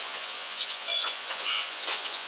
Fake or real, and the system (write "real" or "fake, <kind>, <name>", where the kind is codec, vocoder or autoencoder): fake, vocoder, Vocos